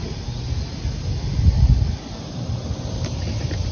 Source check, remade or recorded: recorded